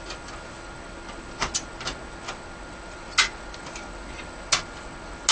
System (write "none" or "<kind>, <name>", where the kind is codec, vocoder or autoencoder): none